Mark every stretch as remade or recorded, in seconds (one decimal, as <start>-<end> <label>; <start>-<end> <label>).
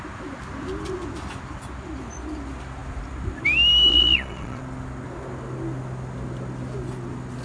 0.0-3.9 recorded; 3.9-4.6 remade; 4.6-7.4 recorded